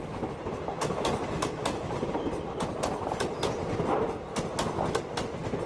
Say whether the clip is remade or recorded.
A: recorded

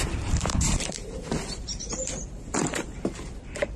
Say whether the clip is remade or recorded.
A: remade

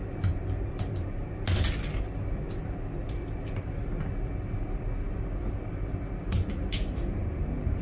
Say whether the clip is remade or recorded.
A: recorded